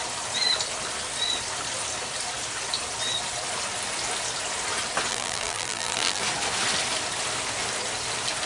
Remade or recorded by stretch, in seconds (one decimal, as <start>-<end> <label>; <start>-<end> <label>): 0.0-5.1 recorded; 5.1-6.2 remade; 6.2-8.5 recorded

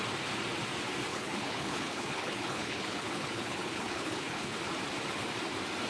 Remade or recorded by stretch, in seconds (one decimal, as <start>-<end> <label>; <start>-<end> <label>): 0.0-1.1 recorded; 1.1-4.6 remade; 4.6-5.9 recorded